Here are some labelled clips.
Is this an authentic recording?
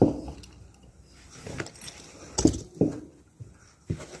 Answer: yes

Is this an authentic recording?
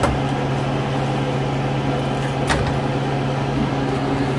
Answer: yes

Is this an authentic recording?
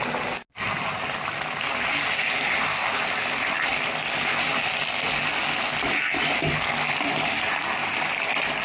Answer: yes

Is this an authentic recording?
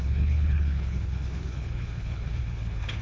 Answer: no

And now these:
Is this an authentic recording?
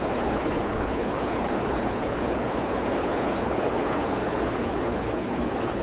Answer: no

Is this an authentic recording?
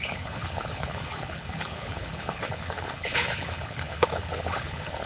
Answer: no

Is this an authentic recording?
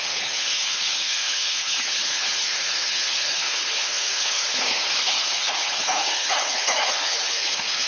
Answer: no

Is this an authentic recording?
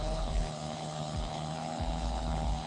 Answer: no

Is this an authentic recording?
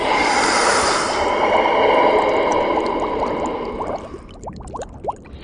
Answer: yes